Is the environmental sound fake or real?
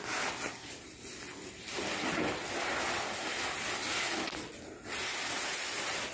real